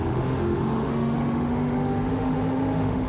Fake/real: fake